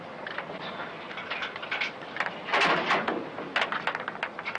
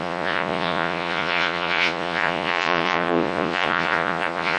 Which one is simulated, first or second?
second